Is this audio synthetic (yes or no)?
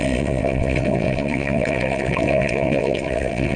yes